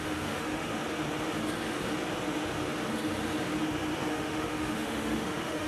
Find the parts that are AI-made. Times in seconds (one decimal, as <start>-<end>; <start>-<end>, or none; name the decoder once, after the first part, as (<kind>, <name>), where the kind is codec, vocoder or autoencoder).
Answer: 0.0-0.7 (autoencoder, DAC-VAE); 4.1-5.7